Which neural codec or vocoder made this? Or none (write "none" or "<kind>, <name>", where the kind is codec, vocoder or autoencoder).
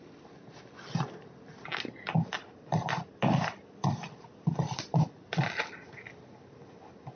none